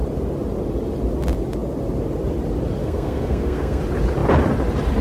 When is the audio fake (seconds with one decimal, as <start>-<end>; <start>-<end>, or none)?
2.8-3.8

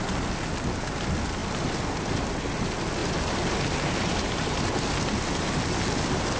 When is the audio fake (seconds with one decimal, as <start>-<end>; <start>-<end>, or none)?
none

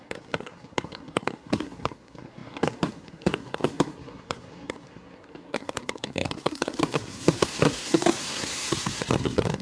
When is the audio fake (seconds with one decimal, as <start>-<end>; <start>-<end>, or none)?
0.0-9.6

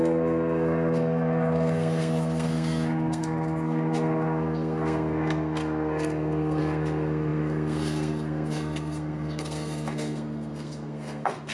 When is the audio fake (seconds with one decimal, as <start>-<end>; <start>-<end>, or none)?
0.0-11.5